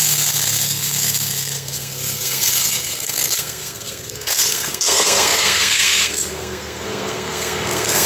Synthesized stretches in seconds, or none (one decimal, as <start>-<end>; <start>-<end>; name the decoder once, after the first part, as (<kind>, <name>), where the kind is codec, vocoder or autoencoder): 0.0-8.1 (codec, SNAC)